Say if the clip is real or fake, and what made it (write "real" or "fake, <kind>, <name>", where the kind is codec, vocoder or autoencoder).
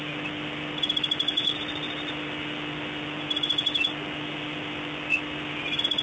real